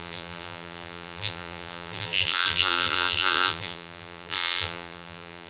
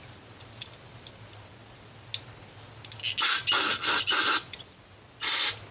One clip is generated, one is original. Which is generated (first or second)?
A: first